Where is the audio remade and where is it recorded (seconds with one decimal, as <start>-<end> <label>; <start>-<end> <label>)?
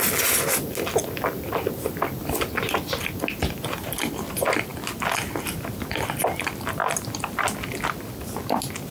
0.0-8.9 recorded